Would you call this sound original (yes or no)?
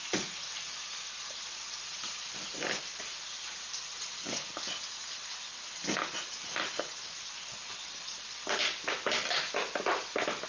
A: yes